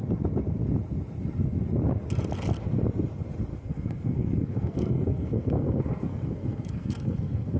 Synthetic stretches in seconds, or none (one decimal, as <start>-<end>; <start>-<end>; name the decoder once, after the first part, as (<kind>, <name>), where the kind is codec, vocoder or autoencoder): 3.5-7.6 (codec, SNAC)